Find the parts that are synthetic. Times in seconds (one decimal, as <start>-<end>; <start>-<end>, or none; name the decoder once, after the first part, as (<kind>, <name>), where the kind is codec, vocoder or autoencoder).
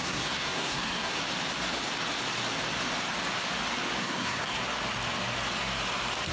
0.0-1.2 (codec, SNAC); 4.0-4.6